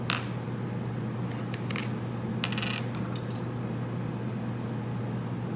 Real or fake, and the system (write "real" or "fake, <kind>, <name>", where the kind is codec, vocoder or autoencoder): real